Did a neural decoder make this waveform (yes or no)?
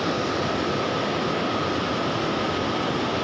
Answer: no